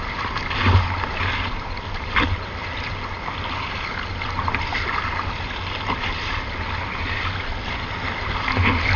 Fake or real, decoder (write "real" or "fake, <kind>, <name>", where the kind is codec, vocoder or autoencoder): real